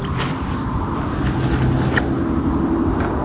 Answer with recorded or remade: recorded